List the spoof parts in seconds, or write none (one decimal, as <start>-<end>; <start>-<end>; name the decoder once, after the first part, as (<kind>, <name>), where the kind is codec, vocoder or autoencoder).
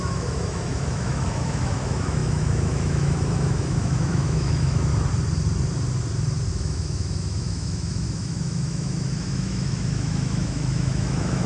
0.0-4.9 (autoencoder, DAC-VAE); 6.5-11.5